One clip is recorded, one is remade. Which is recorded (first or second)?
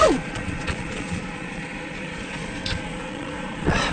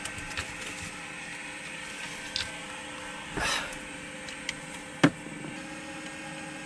second